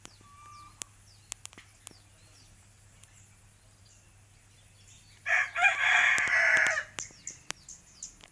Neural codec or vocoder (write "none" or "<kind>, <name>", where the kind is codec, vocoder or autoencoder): none